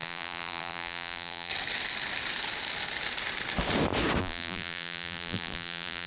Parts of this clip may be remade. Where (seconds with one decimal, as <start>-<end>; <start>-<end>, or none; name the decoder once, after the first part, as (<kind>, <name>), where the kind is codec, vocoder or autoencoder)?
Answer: 0.0-1.5 (vocoder, BigVGAN v2); 4.2-6.1